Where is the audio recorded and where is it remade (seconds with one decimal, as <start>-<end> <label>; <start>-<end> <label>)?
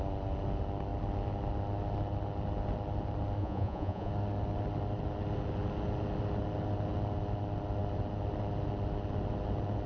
0.0-3.4 recorded; 3.4-4.1 remade; 4.1-9.9 recorded